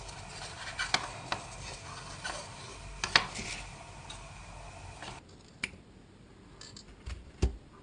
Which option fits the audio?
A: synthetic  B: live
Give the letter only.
B